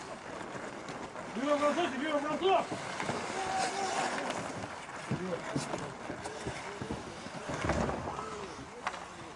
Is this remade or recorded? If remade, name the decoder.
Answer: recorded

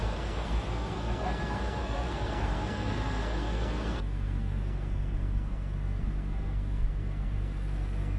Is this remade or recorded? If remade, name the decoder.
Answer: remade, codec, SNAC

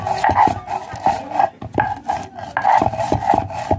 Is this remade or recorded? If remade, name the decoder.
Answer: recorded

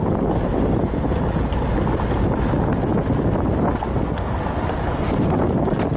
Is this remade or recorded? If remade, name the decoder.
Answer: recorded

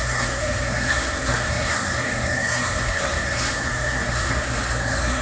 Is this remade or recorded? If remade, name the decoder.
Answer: remade, codec, SNAC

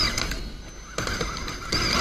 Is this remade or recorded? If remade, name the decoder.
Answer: recorded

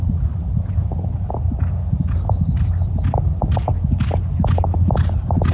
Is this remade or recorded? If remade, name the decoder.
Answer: recorded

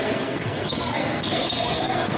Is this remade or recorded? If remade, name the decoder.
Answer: remade, codec, SNAC